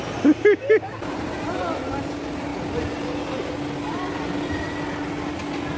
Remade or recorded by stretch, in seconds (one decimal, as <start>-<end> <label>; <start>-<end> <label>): 0.0-1.0 remade; 1.0-5.8 recorded